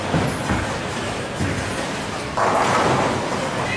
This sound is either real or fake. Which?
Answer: real